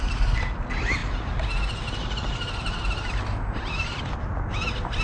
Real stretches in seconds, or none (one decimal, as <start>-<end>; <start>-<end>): 0.0-5.0

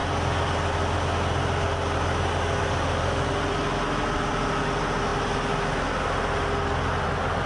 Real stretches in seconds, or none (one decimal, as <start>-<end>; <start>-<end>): 0.0-7.5

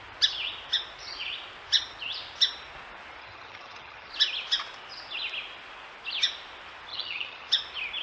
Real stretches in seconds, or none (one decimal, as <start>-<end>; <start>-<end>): 0.0-3.2; 4.1-6.9; 7.5-8.0

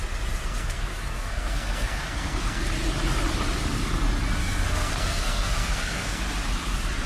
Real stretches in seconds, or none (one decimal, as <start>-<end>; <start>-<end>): 0.0-0.4; 2.6-4.4; 6.2-7.1

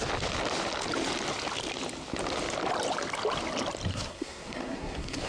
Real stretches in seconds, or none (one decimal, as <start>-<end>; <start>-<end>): 0.0-3.9